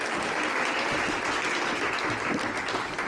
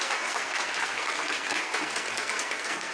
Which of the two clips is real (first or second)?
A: first